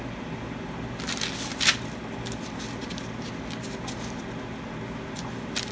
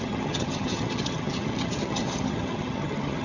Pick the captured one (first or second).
first